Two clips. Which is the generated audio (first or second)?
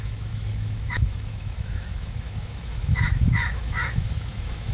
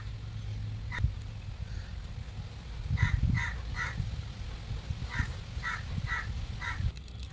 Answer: first